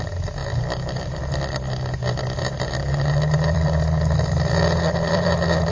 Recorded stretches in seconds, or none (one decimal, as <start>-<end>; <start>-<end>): 0.0-0.4; 1.4-2.4